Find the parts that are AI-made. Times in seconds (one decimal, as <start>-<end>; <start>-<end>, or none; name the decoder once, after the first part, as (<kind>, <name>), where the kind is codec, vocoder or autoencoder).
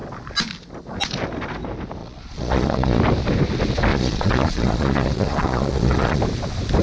2.0-3.0 (vocoder, Vocos); 3.9-6.2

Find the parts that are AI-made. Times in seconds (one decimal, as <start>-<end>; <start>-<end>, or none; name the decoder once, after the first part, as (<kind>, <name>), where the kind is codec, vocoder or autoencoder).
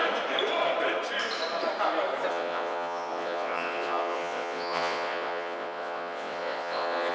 2.3-7.1 (vocoder, WaveNeXt)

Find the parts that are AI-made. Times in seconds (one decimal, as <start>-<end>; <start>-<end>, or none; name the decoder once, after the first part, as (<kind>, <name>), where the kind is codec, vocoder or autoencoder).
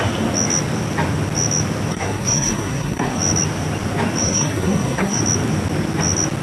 1.9-3.2 (codec, SNAC); 4.2-5.2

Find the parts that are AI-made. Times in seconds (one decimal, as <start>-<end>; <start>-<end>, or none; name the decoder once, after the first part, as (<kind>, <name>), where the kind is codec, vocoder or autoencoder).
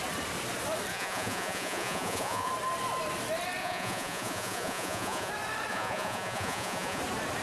0.9-2.5 (vocoder, Vocos); 3.6-5.3; 5.7-7.0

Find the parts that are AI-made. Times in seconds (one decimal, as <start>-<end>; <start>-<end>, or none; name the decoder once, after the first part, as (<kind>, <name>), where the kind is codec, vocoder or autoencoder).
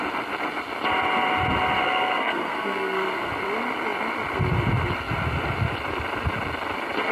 1.8-3.3 (codec, SNAC)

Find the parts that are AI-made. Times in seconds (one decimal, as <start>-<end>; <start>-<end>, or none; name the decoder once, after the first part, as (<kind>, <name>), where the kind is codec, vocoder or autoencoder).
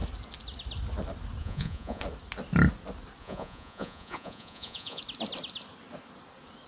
1.4-2.0 (vocoder, Vocos); 3.2-5.0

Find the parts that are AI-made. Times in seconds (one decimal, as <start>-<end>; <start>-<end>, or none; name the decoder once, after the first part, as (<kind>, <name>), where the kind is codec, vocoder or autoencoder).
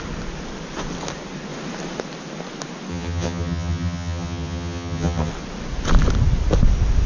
2.9-5.3 (vocoder, HiFi-GAN)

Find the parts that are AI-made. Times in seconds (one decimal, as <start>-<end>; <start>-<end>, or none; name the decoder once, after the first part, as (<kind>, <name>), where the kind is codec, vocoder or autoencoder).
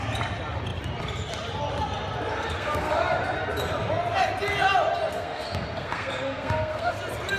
2.3-3.0 (codec, SNAC); 5.1-6.9